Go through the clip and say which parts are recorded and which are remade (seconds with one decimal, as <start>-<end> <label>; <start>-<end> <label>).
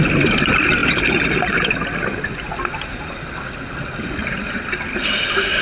0.0-0.8 remade; 0.8-4.2 recorded; 4.2-5.6 remade